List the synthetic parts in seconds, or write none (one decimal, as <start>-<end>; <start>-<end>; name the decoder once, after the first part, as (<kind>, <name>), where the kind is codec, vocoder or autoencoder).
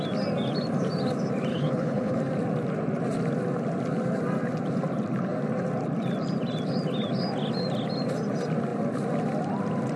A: 1.5-2.2 (codec, HILCodec)